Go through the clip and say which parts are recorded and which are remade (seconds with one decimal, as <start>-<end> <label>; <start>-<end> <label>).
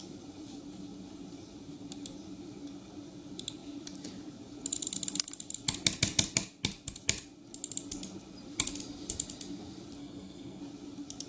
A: 0.0-10.0 recorded; 10.0-10.6 remade; 10.6-11.3 recorded